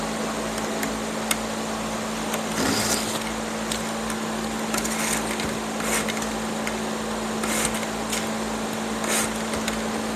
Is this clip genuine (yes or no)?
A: yes